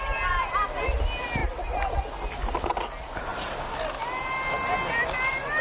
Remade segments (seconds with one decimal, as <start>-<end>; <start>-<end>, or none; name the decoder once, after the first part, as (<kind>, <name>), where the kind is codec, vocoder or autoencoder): none